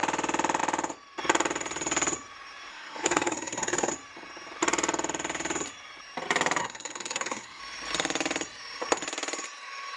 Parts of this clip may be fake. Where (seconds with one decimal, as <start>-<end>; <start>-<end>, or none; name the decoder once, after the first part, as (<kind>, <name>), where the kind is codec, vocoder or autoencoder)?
2.7-3.9 (codec, SNAC); 6.6-7.6